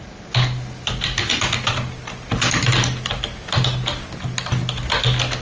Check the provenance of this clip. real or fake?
real